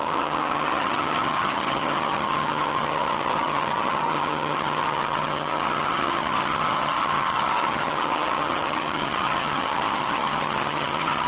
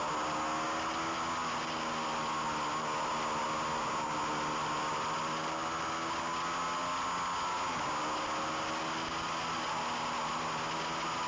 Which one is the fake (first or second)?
first